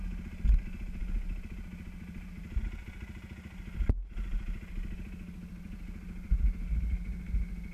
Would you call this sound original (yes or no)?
yes